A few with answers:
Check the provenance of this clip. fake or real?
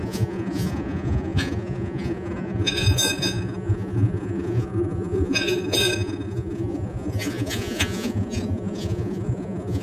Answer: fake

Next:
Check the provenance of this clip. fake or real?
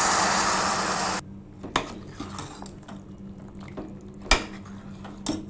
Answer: real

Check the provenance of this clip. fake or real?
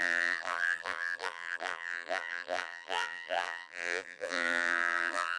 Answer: fake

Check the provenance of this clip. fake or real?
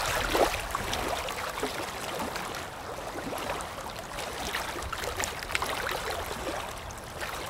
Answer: real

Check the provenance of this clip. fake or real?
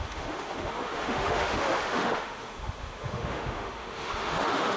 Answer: fake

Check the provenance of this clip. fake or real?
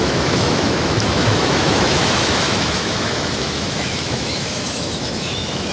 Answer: fake